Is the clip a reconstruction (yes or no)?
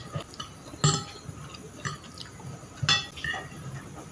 no